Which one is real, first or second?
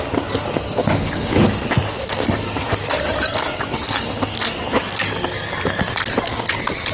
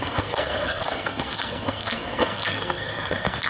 first